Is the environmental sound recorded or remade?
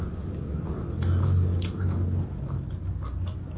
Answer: recorded